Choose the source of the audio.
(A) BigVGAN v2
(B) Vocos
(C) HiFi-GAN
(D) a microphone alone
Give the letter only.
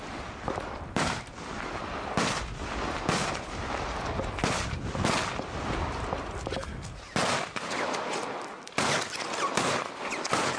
D